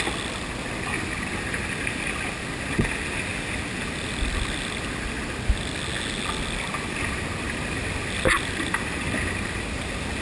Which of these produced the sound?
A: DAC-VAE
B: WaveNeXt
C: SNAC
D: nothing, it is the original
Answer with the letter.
D